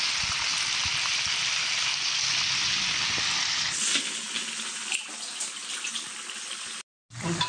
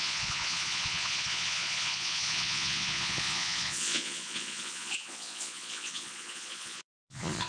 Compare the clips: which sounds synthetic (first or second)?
second